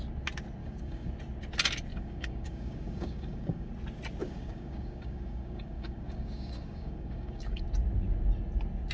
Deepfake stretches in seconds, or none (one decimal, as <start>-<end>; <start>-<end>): 0.6-1.1; 1.9-3.7; 4.2-7.6